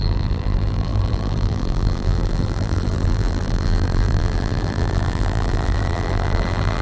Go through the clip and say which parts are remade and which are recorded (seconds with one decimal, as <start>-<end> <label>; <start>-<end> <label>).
0.0-6.8 remade